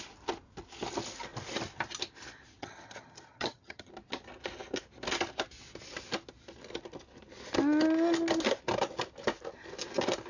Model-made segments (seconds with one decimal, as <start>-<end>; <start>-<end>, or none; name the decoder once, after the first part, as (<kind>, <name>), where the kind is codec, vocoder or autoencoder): 2.6-3.9 (vocoder, HiFi-GAN)